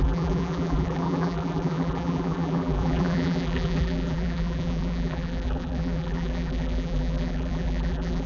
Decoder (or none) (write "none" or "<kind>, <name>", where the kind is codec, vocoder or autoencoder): vocoder, BigVGAN v2